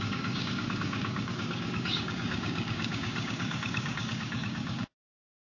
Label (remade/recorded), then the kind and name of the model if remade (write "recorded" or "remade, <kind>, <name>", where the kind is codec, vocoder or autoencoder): remade, codec, DAC